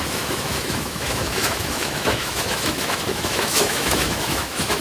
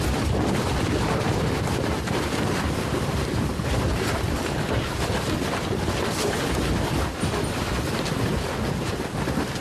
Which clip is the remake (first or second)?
first